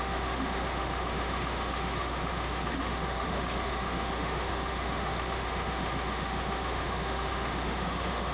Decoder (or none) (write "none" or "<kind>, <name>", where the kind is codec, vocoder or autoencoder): autoencoder, DAC-VAE